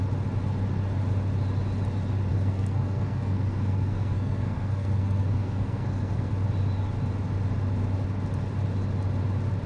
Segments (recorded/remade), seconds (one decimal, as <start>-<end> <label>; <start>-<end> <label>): 0.0-2.3 recorded; 2.3-6.3 remade; 6.3-9.7 recorded